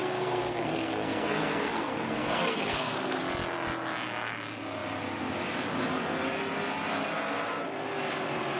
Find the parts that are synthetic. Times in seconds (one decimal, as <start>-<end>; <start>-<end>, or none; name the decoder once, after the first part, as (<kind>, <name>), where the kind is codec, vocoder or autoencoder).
0.0-3.2 (codec, SNAC)